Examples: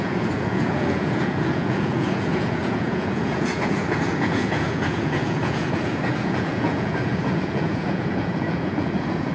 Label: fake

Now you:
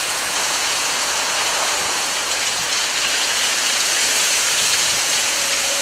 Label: fake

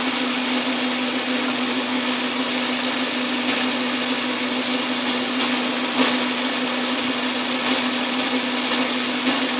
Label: real